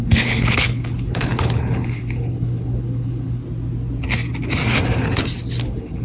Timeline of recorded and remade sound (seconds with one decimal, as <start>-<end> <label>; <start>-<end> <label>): 0.0-3.4 remade; 3.4-5.6 recorded; 5.6-6.0 remade